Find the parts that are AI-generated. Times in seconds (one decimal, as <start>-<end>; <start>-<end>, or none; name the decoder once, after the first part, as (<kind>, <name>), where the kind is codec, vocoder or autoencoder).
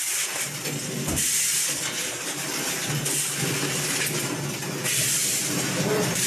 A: 2.0-2.5 (vocoder, BigVGAN v2); 5.2-6.3